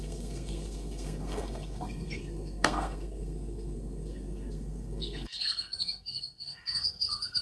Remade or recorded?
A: remade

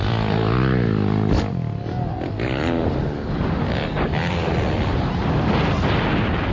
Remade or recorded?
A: recorded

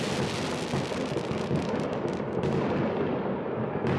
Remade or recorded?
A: recorded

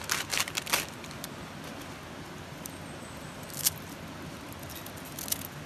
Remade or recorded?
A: recorded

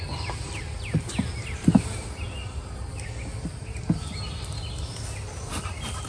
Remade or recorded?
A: recorded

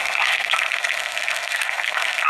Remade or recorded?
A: remade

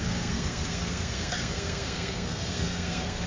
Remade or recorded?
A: remade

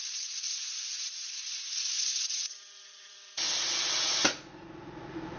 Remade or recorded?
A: remade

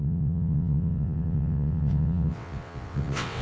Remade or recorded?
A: remade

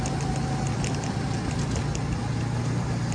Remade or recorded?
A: recorded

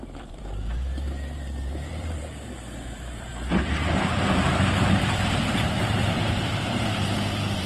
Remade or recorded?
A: remade